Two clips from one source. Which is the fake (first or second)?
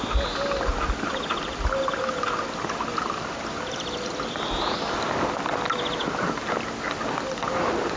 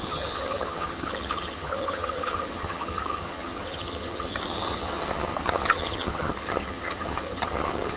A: second